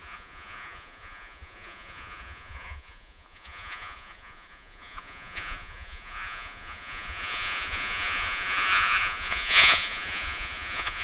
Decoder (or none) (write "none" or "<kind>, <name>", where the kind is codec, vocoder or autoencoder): vocoder, Vocos